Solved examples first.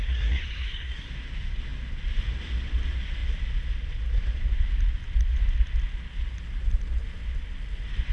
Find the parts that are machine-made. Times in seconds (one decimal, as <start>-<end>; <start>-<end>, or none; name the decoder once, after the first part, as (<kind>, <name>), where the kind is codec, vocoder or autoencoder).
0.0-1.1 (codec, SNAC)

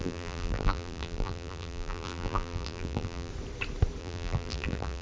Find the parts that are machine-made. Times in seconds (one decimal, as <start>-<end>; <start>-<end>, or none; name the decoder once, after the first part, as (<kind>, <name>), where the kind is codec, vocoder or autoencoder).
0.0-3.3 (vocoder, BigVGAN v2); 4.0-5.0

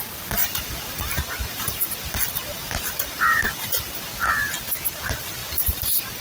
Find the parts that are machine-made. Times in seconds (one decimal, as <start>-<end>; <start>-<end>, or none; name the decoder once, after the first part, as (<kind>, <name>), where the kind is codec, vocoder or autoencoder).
0.4-4.1 (vocoder, BigVGAN v2); 5.4-6.2

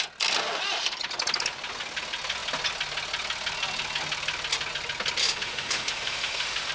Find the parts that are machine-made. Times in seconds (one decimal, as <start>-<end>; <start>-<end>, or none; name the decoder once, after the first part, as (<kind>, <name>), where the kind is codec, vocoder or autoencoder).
5.2-6.7 (autoencoder, DAC-VAE)